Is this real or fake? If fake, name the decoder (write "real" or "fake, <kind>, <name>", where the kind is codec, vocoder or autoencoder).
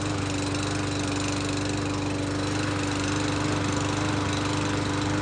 real